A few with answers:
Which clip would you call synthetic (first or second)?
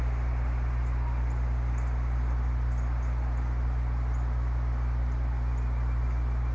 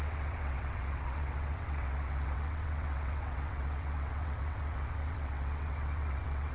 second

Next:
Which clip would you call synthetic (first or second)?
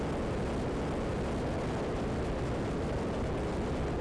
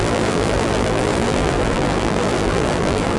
second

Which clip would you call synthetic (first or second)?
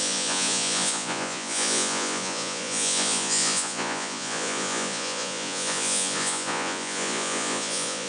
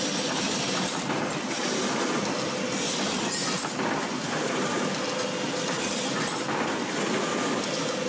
first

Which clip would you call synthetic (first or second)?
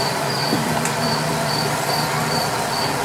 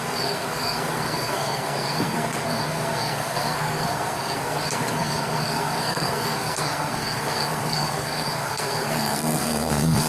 second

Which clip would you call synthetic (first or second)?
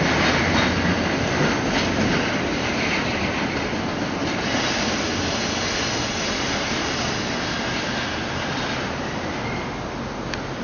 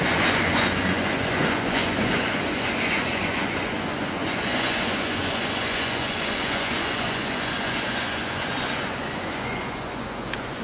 second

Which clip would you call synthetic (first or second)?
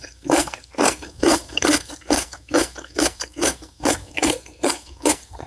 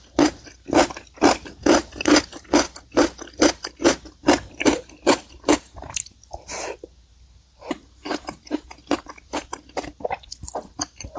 first